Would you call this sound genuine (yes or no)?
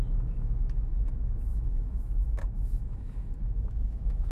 no